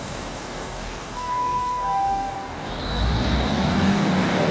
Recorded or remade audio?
remade